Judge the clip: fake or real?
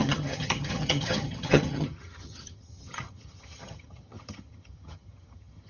fake